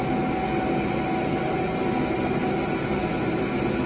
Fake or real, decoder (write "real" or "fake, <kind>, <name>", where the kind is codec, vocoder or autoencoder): real